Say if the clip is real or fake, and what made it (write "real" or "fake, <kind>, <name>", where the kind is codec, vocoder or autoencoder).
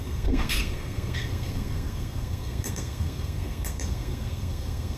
fake, codec, SNAC